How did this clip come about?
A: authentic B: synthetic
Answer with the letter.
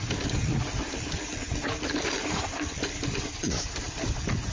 A